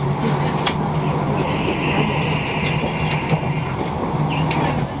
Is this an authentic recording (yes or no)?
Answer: yes